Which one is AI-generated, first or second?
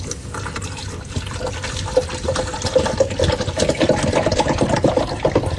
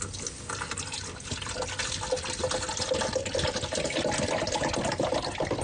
first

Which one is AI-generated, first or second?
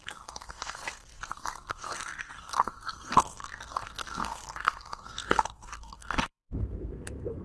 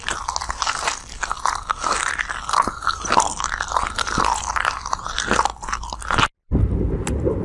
first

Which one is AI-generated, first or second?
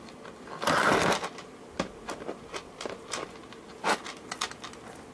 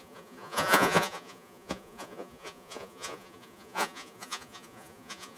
second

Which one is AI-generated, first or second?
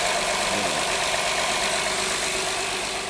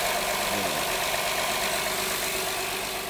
first